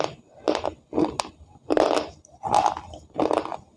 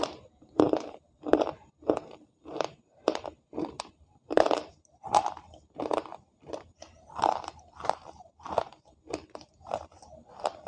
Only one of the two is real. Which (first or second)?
first